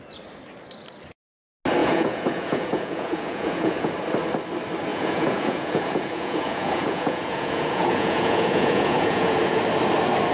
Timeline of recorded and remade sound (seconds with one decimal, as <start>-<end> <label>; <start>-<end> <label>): 0.0-1.8 recorded; 1.8-3.9 remade; 3.9-4.9 recorded; 4.9-9.6 remade; 9.6-10.3 recorded